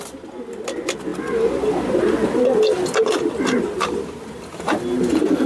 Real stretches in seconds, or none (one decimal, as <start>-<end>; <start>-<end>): 0.0-5.5